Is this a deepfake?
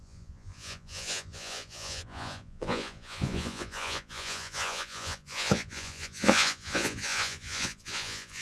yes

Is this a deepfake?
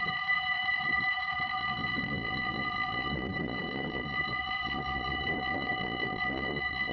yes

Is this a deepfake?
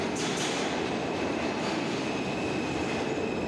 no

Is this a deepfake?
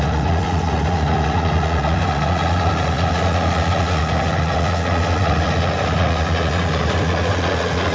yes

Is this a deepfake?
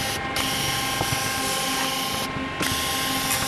no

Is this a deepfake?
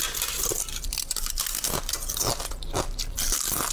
no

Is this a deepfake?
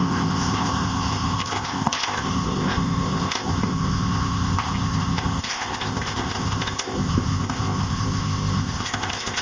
yes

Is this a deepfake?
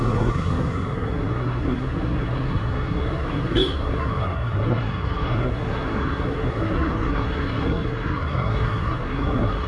yes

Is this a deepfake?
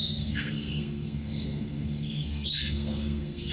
yes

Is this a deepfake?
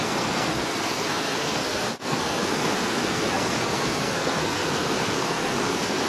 yes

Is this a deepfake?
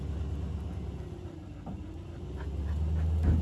no